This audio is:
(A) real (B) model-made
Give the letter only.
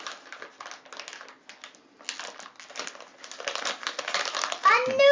A